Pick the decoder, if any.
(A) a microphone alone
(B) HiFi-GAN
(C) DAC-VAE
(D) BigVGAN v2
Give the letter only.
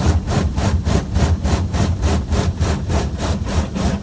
A